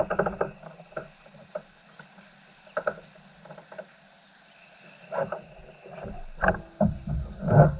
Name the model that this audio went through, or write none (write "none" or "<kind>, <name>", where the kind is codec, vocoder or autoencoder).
none